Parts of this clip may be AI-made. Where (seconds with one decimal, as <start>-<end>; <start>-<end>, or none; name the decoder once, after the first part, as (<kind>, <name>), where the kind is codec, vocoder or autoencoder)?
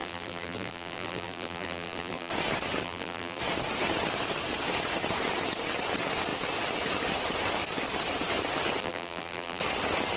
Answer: 0.0-2.3 (vocoder, BigVGAN v2); 2.8-3.4; 8.8-9.6